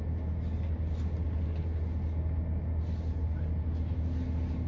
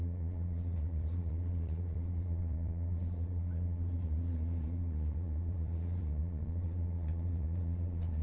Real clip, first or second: first